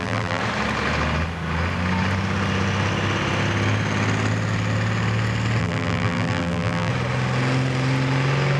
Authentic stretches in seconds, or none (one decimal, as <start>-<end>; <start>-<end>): 0.4-5.6; 6.9-8.6